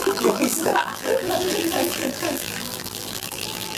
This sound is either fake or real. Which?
fake